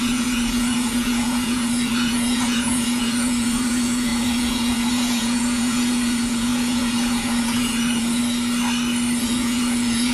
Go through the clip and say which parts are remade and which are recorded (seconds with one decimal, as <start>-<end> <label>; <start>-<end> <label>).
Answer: 0.0-8.2 remade; 8.2-9.2 recorded; 9.2-10.1 remade